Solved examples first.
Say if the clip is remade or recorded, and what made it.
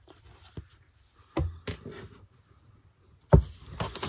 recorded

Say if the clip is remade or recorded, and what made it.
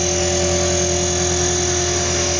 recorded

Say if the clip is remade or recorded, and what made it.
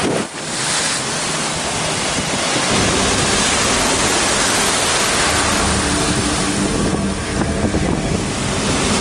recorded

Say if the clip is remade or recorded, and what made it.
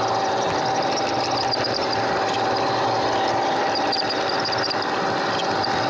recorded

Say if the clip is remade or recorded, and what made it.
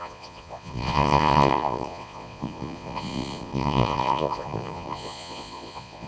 remade, vocoder, Vocos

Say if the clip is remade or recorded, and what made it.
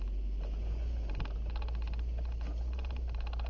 recorded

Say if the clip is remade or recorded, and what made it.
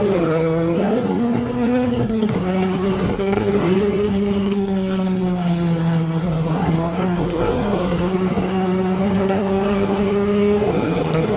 remade, codec, SNAC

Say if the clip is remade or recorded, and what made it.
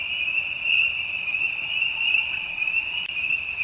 remade, vocoder, BigVGAN v2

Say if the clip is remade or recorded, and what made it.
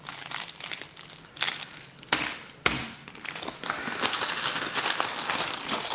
recorded